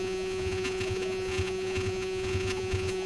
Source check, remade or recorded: remade